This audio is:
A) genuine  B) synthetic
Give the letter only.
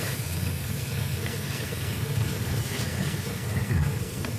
B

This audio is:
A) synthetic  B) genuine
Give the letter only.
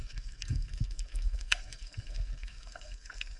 A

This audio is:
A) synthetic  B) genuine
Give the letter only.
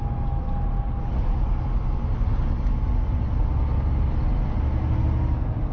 B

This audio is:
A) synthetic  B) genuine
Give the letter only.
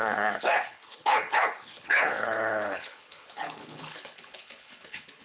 A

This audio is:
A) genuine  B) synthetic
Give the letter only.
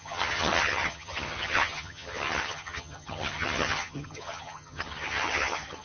B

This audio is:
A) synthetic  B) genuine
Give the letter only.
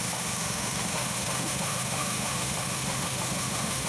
A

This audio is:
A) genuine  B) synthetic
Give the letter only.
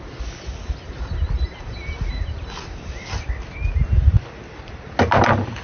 A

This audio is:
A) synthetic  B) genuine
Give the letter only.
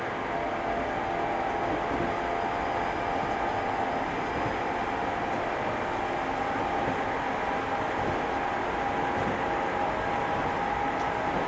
B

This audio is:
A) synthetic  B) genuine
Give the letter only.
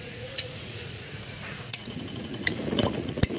A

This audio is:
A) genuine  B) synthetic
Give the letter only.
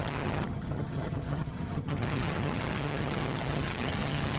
B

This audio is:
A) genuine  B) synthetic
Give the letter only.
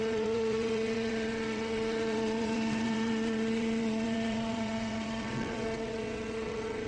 B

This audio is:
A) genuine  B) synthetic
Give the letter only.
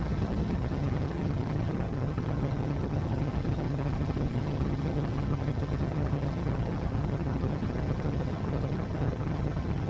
B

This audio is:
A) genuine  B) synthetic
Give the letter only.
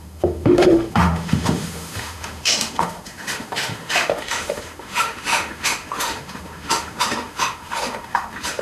B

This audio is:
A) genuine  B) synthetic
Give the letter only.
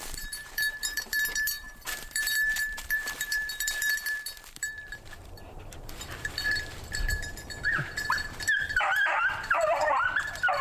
B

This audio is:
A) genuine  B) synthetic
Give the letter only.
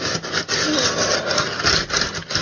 A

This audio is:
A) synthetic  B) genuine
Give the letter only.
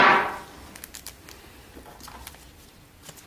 B